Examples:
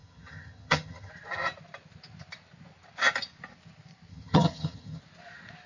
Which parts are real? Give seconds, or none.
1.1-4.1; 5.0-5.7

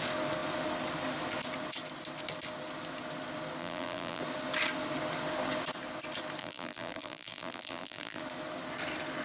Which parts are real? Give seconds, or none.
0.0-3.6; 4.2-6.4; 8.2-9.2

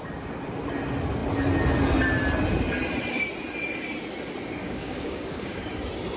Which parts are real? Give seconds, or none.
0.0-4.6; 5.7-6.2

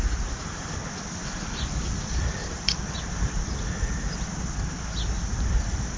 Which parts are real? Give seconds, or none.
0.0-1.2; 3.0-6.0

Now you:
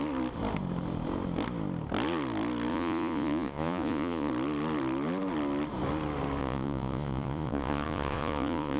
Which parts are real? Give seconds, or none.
0.0-2.7; 4.3-6.4

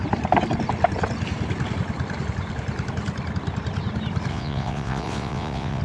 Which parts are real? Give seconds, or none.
0.0-4.3